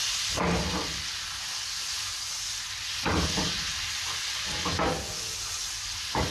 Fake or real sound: real